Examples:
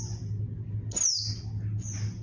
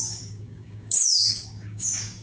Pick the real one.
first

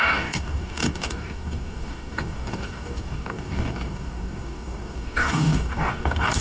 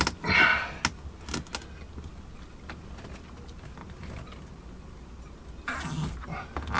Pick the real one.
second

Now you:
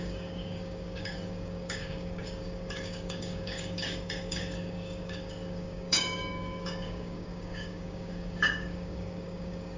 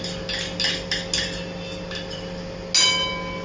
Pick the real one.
second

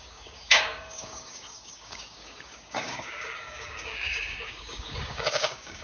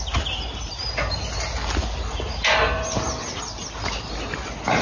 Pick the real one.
second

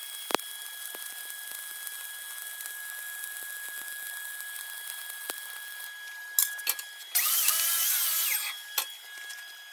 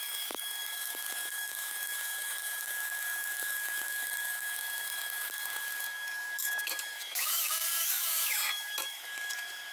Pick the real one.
first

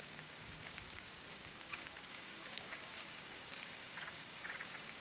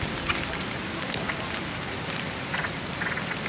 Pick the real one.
second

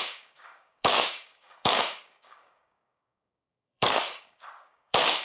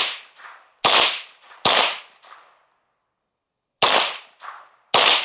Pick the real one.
second